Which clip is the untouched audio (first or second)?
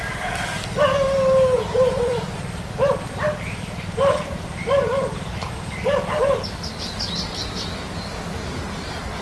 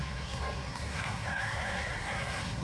first